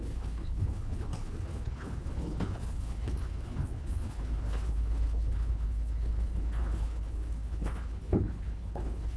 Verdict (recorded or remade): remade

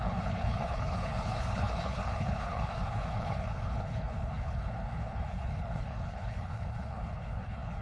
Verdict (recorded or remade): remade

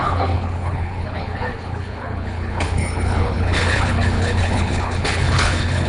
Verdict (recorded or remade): remade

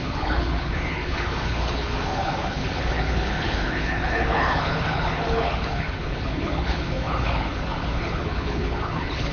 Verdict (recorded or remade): remade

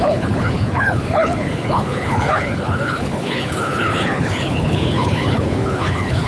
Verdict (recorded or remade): remade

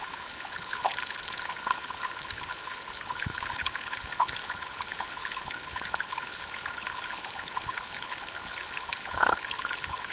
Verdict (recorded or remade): remade